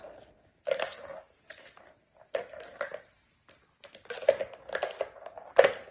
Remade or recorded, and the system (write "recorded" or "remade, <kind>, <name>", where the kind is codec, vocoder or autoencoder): recorded